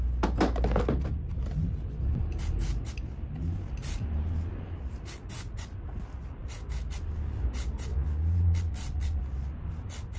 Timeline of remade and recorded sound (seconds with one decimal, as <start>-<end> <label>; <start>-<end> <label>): 0.0-7.9 recorded; 7.9-9.2 remade; 9.2-10.2 recorded